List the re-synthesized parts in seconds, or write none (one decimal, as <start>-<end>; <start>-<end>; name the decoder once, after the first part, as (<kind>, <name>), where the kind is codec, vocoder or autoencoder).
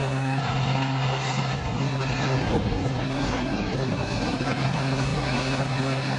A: 0.0-6.2 (codec, SNAC)